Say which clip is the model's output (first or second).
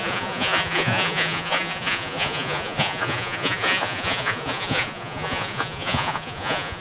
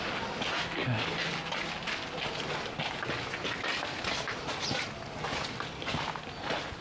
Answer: first